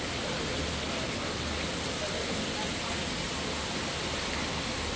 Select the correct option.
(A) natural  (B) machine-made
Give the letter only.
A